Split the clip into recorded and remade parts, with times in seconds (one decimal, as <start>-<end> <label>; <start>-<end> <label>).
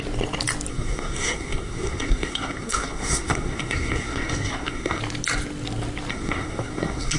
0.0-0.7 recorded; 0.7-5.0 remade; 5.0-6.1 recorded; 6.1-7.2 remade